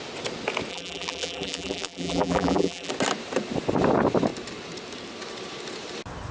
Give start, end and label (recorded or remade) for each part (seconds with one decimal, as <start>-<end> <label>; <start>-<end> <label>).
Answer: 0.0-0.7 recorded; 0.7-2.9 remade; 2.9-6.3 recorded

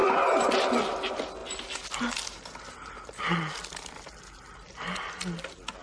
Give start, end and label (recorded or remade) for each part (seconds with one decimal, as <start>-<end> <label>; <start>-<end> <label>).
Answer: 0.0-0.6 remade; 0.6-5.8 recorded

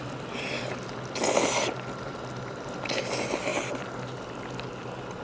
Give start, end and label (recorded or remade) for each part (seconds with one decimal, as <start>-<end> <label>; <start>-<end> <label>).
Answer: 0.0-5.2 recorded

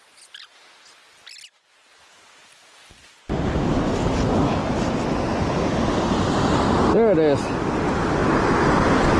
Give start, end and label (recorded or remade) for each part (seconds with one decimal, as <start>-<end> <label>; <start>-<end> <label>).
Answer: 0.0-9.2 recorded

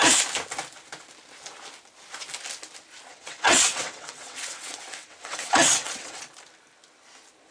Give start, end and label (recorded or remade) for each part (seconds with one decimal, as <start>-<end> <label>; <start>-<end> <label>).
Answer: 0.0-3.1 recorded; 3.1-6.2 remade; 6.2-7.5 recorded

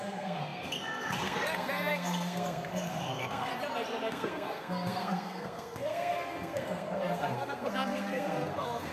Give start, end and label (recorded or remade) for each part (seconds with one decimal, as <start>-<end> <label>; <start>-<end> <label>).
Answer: 0.0-3.5 remade; 3.5-4.1 recorded; 4.1-8.9 remade

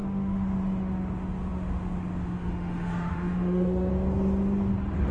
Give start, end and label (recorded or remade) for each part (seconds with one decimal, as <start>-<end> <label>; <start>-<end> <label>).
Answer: 0.0-3.9 remade; 3.9-5.1 recorded